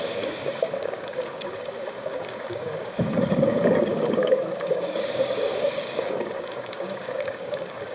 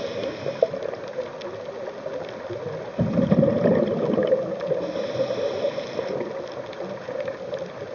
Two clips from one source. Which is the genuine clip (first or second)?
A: second